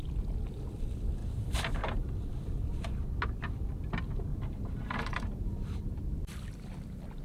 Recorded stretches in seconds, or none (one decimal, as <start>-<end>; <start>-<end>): 0.0-1.2; 2.2-4.3; 6.0-7.2